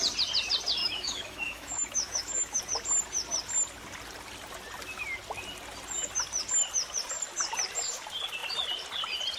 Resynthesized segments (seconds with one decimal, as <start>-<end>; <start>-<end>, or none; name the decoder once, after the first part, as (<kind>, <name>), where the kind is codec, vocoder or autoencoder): 0.8-2.6 (autoencoder, DAC-VAE)

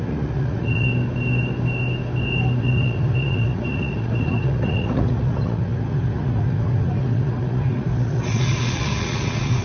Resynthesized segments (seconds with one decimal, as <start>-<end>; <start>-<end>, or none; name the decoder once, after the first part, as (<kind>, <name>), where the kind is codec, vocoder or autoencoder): 0.0-0.9 (vocoder, Vocos); 2.6-9.6

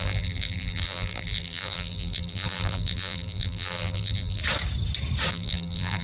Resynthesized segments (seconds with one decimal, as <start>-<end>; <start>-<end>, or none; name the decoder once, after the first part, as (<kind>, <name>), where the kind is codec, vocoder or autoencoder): 0.0-4.4 (vocoder, BigVGAN v2); 5.3-6.0